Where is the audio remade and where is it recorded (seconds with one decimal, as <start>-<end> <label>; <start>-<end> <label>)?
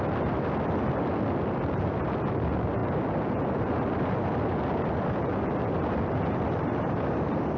0.0-7.6 recorded